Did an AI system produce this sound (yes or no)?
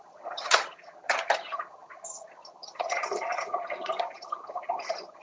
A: yes